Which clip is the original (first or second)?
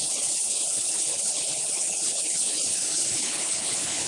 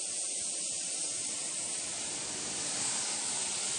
second